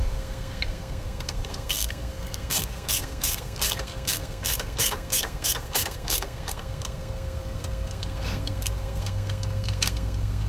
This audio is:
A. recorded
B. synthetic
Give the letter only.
B